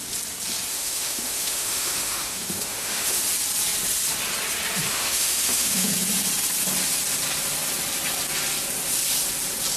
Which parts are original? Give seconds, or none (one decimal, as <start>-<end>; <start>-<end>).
0.0-0.7; 3.2-4.9; 5.9-9.8